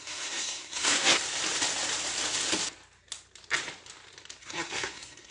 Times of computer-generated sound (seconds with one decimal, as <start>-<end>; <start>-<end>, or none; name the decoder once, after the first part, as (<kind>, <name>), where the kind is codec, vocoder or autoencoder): 0.0-1.2 (codec, SNAC); 4.4-5.3